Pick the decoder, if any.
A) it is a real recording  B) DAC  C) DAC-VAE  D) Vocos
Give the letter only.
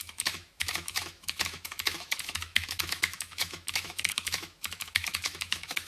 C